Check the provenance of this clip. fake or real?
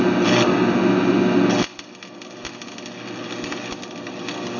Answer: real